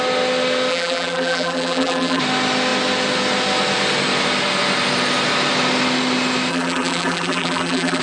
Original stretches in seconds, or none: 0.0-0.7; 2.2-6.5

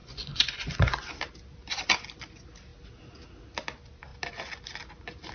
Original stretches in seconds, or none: 1.1-5.3

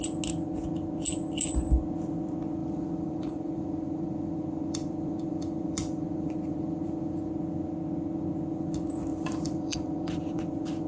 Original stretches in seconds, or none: 0.0-2.6; 7.3-9.1; 10.4-10.9